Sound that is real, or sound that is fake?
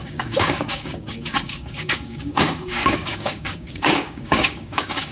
fake